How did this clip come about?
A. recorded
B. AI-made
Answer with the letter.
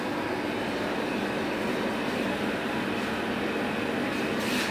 A